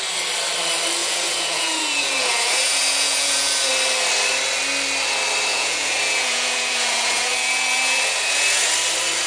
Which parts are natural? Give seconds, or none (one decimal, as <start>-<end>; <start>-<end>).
0.0-1.0; 3.7-5.5; 8.7-9.3